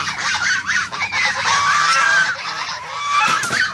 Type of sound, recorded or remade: remade